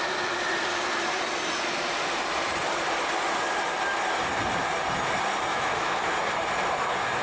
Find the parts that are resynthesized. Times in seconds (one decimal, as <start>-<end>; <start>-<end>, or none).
5.5-6.1